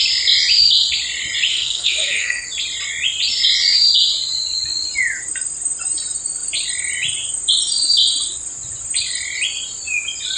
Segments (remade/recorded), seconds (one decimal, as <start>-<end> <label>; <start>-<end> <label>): 0.0-1.5 recorded; 1.5-2.5 remade; 2.5-10.4 recorded